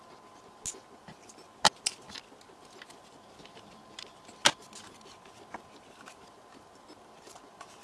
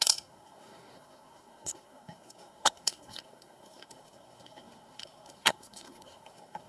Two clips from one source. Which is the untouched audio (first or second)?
first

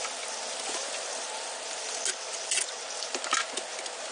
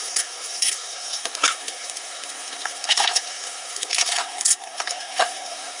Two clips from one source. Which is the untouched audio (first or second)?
first